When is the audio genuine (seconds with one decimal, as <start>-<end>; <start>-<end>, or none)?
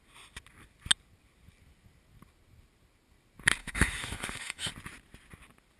0.0-3.6; 4.7-5.8